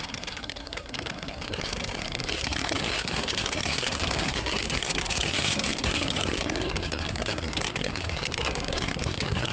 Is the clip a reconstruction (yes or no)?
yes